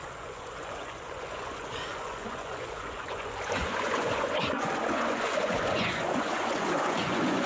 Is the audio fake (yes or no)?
yes